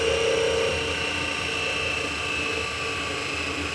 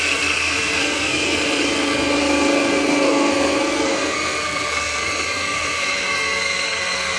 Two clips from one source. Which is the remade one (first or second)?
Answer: second